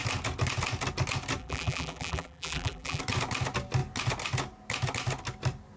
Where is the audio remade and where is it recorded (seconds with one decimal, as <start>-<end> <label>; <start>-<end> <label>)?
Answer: 0.0-1.4 recorded; 1.4-3.0 remade; 3.0-5.8 recorded